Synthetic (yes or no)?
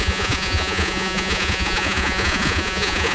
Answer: yes